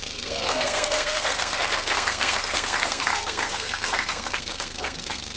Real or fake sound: fake